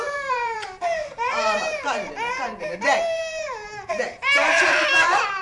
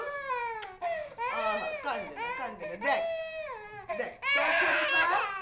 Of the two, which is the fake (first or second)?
first